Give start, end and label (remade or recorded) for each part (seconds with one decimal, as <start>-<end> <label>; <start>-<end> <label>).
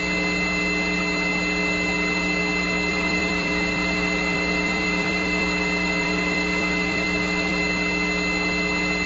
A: 0.0-2.9 recorded; 2.9-7.6 remade; 7.6-9.1 recorded